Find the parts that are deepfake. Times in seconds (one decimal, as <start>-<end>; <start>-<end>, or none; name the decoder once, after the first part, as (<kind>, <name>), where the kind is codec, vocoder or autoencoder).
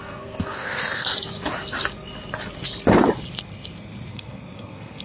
0.0-1.1 (codec, SNAC); 4.1-5.0